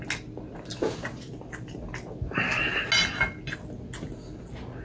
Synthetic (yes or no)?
no